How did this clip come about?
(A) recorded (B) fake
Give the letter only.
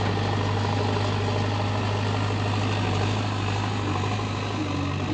A